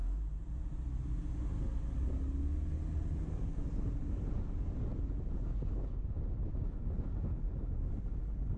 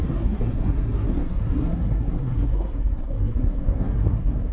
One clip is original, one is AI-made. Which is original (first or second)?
first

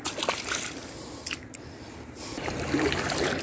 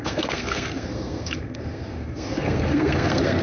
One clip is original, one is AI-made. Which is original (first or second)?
first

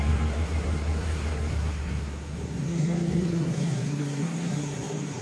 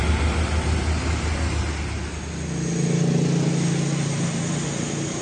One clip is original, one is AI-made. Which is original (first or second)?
second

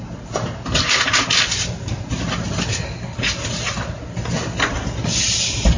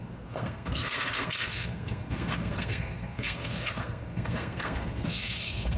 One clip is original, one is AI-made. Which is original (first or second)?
first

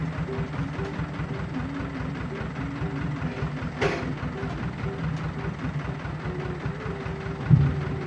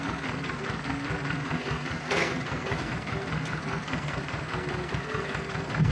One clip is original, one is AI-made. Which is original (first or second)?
first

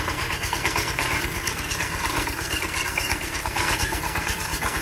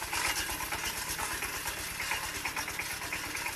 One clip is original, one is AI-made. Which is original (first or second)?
second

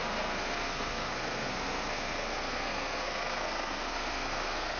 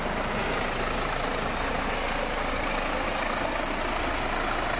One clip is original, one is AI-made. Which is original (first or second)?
second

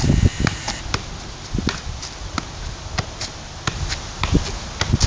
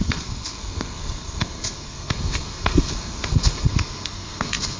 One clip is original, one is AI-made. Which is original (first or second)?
first